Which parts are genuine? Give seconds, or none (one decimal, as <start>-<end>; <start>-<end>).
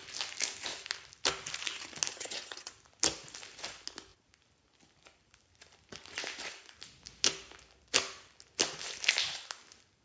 0.0-2.1; 2.7-10.0